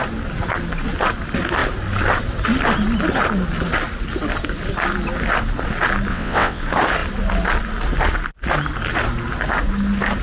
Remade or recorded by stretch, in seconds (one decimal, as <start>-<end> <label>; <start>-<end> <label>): 0.0-6.1 recorded; 6.1-6.6 remade; 6.6-10.2 recorded

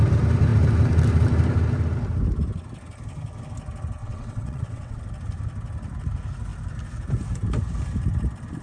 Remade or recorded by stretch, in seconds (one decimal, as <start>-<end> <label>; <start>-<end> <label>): 0.0-4.0 recorded; 4.0-5.0 remade; 5.0-8.6 recorded

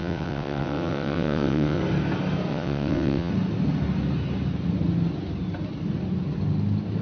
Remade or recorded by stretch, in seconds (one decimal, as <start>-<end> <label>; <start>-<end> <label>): 0.0-1.8 remade; 1.8-2.5 recorded; 2.5-3.3 remade; 3.3-7.0 recorded